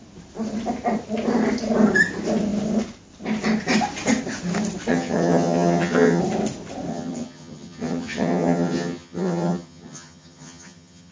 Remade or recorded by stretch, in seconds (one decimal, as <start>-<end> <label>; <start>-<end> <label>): 0.0-4.9 recorded; 4.9-6.2 remade; 6.2-6.9 recorded; 6.9-11.1 remade